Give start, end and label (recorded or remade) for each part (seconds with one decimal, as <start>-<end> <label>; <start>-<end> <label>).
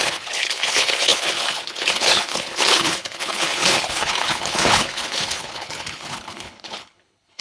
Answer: 0.0-7.4 remade